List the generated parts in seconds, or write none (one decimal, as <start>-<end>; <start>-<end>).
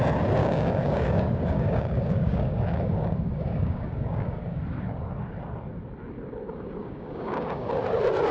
0.4-4.6; 6.8-7.7